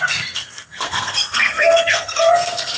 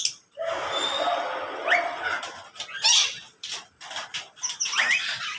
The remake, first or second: first